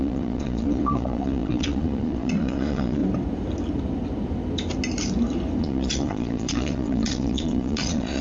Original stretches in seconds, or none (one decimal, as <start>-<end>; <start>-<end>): 3.0-5.6

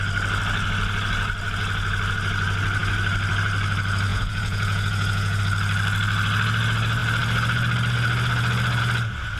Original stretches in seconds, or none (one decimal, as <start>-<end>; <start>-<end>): 0.0-4.1; 5.4-9.4

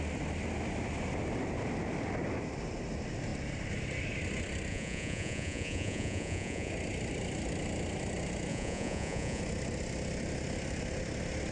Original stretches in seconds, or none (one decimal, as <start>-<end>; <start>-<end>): 0.0-4.7; 6.7-8.5; 9.4-11.5

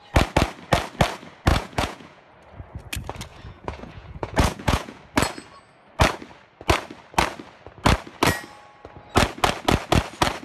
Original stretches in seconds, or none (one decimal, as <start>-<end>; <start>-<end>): 0.0-1.5; 2.3-3.3; 5.0-10.4